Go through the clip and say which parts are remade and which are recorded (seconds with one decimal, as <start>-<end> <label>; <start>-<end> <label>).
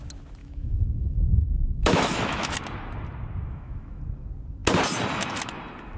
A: 0.0-0.4 recorded; 0.4-2.5 remade; 2.5-3.5 recorded; 3.5-4.0 remade; 4.0-6.0 recorded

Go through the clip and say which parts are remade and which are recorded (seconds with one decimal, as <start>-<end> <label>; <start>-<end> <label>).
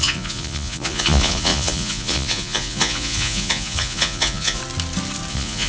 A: 0.0-4.6 remade; 4.6-5.3 recorded; 5.3-5.7 remade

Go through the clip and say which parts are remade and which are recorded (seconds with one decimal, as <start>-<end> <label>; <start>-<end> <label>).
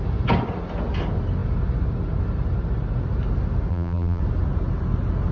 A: 0.0-3.7 recorded; 3.7-4.2 remade; 4.2-5.3 recorded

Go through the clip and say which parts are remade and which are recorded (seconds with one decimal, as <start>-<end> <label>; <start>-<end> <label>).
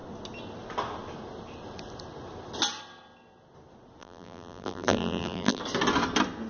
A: 0.0-4.0 recorded; 4.0-5.6 remade; 5.6-6.5 recorded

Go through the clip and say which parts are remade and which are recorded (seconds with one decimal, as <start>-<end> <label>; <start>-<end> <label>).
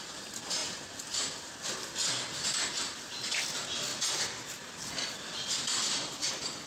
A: 0.0-6.7 recorded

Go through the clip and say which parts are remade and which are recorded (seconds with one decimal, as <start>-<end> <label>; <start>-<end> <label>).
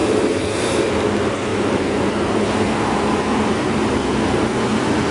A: 0.0-0.9 remade; 0.9-1.5 recorded; 1.5-3.2 remade; 3.2-5.1 recorded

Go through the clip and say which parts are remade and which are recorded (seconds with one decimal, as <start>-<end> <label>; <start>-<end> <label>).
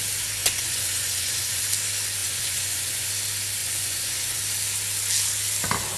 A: 0.0-0.4 recorded; 0.4-1.6 remade; 1.6-2.2 recorded; 2.2-3.1 remade; 3.1-3.6 recorded; 3.6-4.4 remade; 4.4-6.0 recorded